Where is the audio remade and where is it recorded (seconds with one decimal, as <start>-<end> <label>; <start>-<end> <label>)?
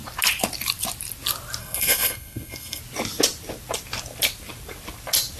0.0-1.6 recorded; 1.6-2.8 remade; 2.8-5.4 recorded